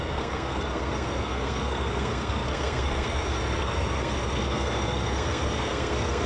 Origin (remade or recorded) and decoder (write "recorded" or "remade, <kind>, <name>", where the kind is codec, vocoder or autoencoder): remade, codec, SNAC